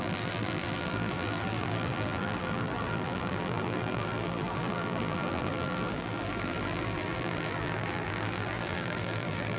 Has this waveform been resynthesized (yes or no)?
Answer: yes